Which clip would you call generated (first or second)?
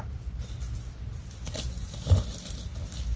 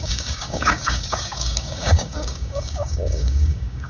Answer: second